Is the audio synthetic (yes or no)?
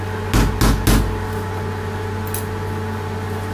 no